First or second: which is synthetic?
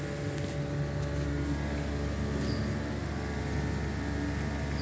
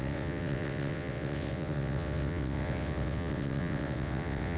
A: second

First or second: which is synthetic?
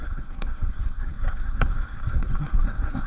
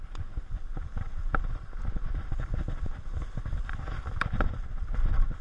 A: first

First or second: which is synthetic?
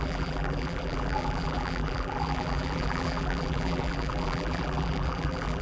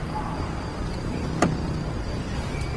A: first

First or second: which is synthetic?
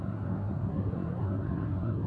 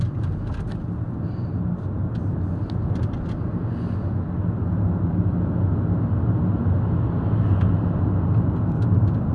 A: first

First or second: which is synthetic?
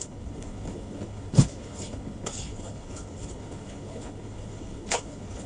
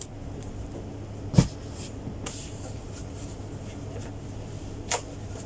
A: first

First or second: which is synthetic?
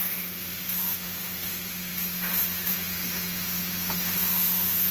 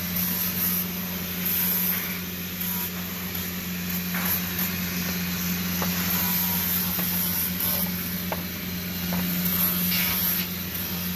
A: first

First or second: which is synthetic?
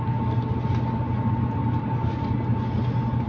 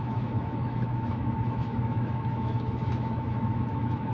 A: second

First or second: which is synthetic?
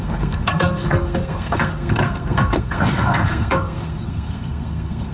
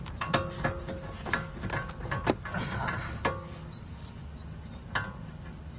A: first